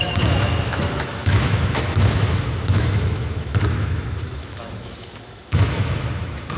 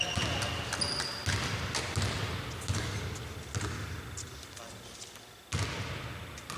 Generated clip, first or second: first